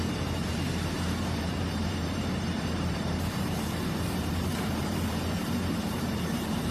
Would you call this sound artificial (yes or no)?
yes